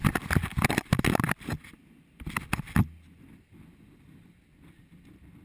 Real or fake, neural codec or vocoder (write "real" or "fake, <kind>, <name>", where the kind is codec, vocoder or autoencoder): real